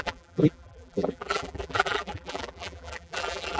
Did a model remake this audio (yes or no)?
yes